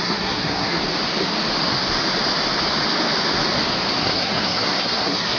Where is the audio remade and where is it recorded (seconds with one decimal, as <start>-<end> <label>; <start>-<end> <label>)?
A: 0.0-0.8 remade; 0.8-4.0 recorded; 4.0-5.4 remade